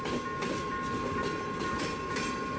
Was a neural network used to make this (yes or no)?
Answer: no